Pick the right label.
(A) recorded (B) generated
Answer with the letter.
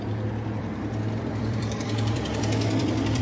B